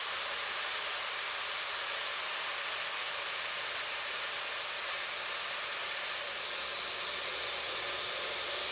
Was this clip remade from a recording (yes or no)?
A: no